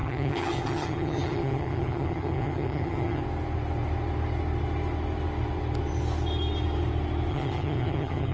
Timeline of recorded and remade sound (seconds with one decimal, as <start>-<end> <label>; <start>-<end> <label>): 0.0-3.2 remade; 3.2-7.3 recorded; 7.3-8.3 remade